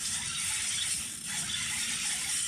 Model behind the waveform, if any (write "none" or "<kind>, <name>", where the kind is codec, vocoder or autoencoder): vocoder, BigVGAN v2